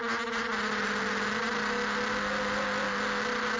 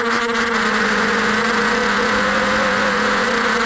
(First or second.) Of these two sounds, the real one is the first